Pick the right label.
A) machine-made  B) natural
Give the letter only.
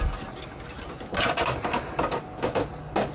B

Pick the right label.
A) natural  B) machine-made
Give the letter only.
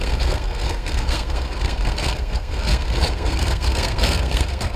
B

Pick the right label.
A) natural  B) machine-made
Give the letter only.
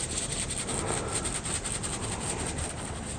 A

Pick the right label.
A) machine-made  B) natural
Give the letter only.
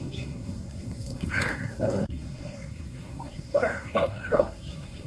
A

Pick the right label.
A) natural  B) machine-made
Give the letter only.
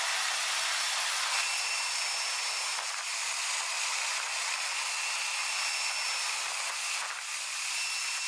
A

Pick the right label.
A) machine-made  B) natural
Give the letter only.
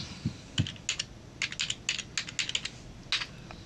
B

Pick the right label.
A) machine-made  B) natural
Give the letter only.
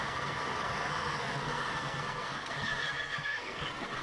A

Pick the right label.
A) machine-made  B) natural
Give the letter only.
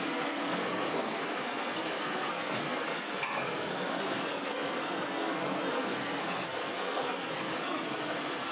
A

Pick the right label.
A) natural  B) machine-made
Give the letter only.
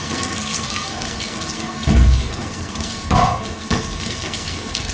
B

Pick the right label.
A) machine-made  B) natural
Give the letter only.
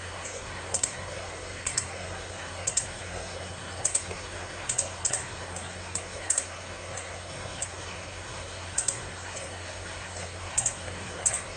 A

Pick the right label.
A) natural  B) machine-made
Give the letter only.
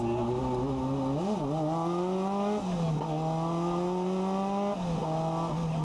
A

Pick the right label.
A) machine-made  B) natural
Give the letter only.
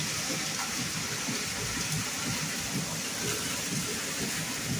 B